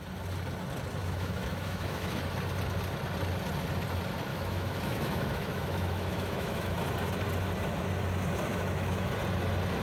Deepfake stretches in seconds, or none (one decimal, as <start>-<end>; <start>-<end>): 1.0-2.2; 4.3-6.8; 8.5-9.1